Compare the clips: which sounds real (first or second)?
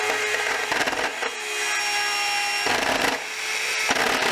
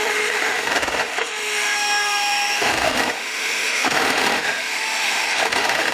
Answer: first